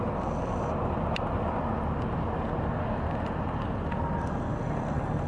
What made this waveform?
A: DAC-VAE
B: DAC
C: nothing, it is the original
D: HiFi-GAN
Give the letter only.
C